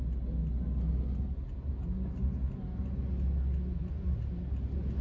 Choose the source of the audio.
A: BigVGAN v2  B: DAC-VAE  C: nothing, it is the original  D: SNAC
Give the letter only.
C